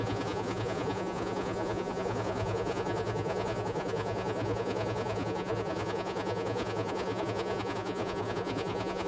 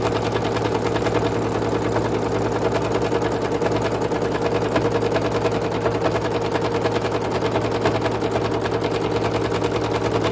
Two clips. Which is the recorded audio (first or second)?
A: second